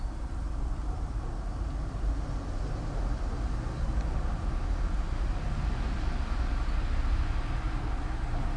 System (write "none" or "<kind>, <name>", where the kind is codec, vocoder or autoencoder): none